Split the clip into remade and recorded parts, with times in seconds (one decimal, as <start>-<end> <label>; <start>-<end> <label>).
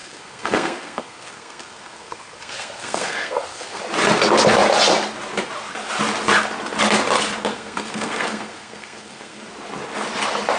0.0-3.8 remade; 3.8-7.5 recorded; 7.5-9.5 remade; 9.5-10.6 recorded